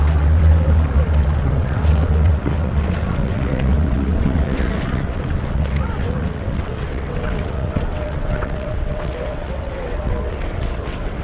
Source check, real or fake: fake